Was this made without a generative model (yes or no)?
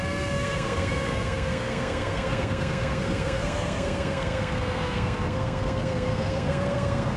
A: no